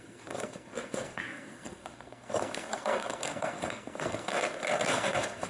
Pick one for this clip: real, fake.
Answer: fake